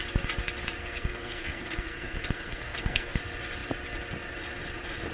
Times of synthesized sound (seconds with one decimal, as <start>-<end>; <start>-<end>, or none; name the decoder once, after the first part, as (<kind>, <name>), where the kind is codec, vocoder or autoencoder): 0.8-3.2 (codec, SNAC)

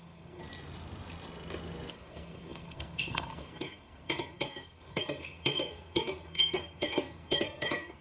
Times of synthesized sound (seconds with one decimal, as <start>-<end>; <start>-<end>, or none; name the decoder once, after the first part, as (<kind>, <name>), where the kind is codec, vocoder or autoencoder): 0.0-0.4 (codec, SNAC); 1.9-8.0

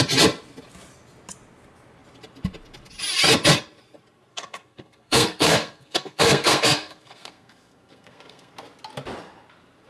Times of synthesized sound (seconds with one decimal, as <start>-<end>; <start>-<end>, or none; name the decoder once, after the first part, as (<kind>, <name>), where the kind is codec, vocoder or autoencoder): 4.3-8.5 (codec, SNAC)